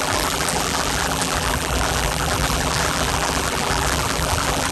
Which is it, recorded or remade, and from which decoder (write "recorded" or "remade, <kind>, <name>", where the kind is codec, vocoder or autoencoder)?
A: remade, vocoder, BigVGAN v2